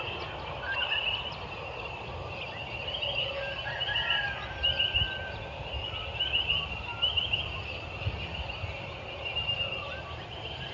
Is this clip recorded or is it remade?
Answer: recorded